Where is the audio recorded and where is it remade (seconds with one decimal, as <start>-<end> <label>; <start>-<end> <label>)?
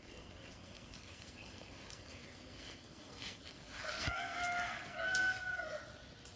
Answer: 0.0-5.8 remade; 5.8-6.4 recorded